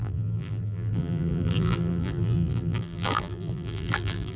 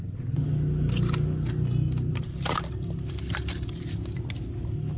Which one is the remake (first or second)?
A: first